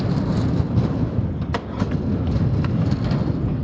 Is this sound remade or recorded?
recorded